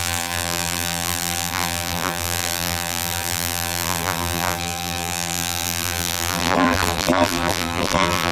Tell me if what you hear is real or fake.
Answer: fake